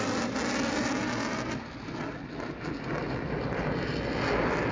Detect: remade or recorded recorded